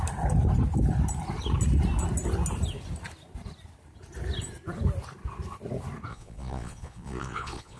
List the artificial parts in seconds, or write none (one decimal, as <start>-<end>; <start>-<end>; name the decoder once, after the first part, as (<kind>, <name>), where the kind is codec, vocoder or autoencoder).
6.1-7.8 (vocoder, Vocos)